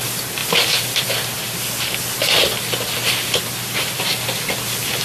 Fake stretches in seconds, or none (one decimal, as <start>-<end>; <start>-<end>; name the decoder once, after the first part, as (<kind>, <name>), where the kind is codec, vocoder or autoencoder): none